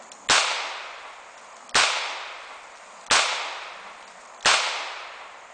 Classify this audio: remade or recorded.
recorded